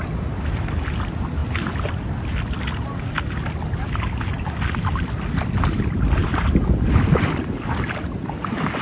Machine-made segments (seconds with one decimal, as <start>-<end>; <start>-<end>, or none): none